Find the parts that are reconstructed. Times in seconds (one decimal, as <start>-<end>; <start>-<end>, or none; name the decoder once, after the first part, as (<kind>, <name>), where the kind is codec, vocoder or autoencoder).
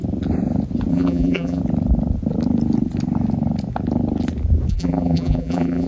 0.9-1.6 (vocoder, BigVGAN v2); 4.7-5.9